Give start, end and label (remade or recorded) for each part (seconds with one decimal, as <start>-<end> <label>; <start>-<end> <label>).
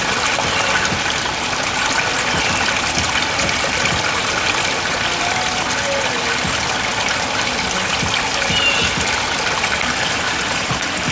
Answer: 0.0-11.1 recorded